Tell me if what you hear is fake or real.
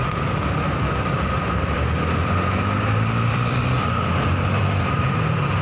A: fake